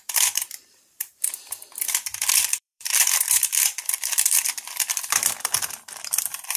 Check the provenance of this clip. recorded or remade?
remade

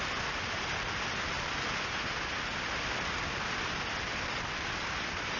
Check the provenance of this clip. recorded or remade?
recorded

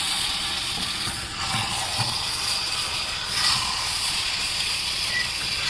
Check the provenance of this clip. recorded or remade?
remade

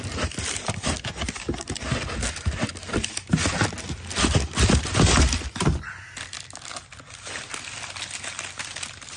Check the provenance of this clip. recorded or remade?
recorded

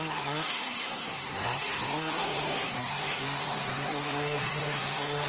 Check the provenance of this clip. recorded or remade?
remade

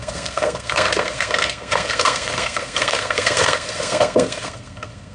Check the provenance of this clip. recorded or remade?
remade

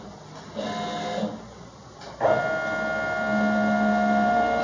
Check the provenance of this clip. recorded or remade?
recorded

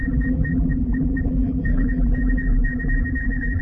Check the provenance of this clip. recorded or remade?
remade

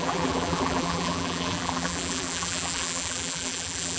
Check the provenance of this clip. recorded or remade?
remade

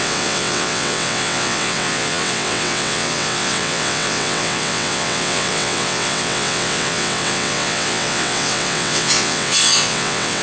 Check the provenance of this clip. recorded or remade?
remade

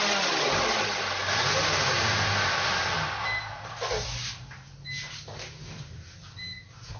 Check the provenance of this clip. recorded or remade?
recorded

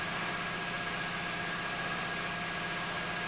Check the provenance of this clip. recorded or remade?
recorded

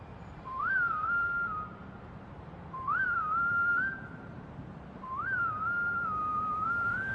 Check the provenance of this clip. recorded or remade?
remade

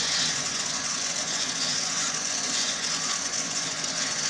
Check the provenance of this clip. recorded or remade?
remade